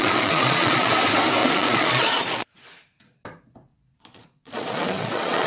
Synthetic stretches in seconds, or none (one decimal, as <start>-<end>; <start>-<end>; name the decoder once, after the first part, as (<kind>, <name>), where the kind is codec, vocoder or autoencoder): 0.0-0.9 (vocoder, Vocos); 1.4-2.6; 3.7-5.5